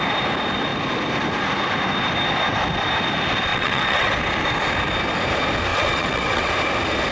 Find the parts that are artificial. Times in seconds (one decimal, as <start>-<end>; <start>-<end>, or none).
3.5-4.1; 5.7-6.5